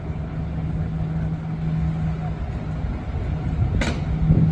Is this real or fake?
real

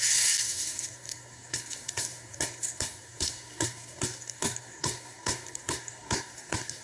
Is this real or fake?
fake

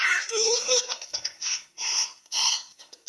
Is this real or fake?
fake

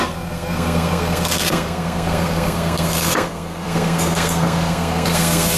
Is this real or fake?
fake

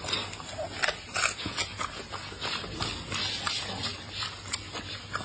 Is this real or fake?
real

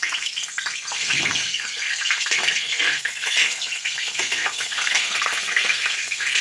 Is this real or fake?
fake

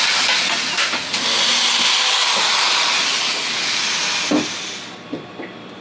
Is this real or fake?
real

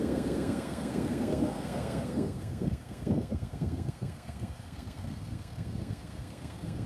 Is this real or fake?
fake